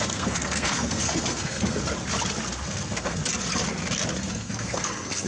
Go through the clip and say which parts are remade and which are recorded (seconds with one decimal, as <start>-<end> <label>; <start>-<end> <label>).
0.0-1.8 remade; 1.8-2.6 recorded; 2.6-3.2 remade; 3.2-4.3 recorded; 4.3-5.3 remade

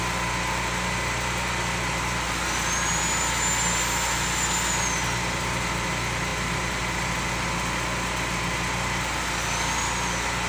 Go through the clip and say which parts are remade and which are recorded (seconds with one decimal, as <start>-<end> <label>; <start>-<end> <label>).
0.0-10.5 recorded

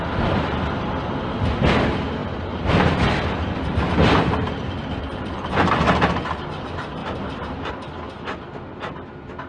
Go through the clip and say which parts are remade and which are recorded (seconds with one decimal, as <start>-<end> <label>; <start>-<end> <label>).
0.0-7.0 recorded; 7.0-7.7 remade; 7.7-9.5 recorded

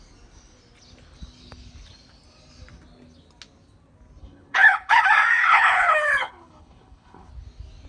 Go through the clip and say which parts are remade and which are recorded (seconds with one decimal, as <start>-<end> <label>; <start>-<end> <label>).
0.0-4.2 recorded; 4.2-5.0 remade; 5.0-5.4 recorded; 5.4-7.3 remade; 7.3-7.9 recorded